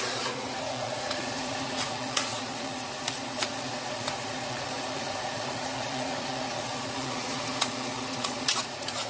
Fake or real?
fake